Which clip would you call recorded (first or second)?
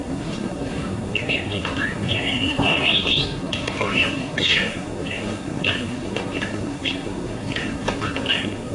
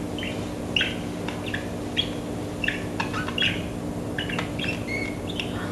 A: second